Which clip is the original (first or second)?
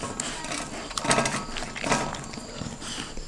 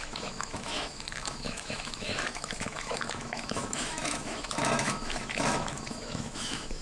first